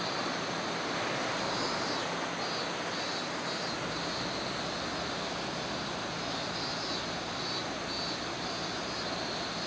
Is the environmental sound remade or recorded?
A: recorded